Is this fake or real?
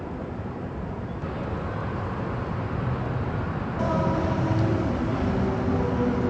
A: real